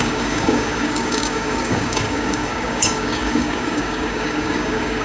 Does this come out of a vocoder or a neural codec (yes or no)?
yes